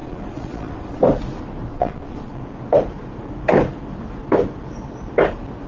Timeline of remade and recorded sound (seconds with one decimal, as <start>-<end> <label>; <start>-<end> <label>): 0.0-1.0 remade; 1.0-1.7 recorded; 1.7-2.4 remade; 2.4-5.7 recorded